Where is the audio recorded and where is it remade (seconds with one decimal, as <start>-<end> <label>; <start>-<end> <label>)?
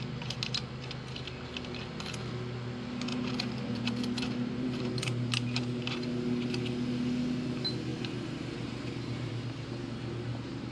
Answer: 0.0-3.1 recorded; 3.1-5.8 remade; 5.8-7.9 recorded; 7.9-10.7 remade